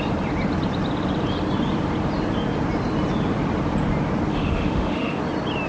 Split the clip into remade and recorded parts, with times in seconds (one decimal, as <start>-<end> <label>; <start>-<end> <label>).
0.0-4.3 recorded; 4.3-5.2 remade; 5.2-5.7 recorded